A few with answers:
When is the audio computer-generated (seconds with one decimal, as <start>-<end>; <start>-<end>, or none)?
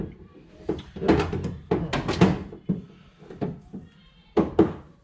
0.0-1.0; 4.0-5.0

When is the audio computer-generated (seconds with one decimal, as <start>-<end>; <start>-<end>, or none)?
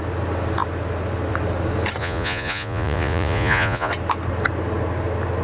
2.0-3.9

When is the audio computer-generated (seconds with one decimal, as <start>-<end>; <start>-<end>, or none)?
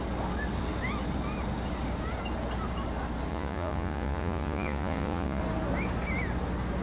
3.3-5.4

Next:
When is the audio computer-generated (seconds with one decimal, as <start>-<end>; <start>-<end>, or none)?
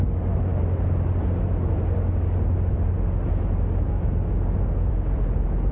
none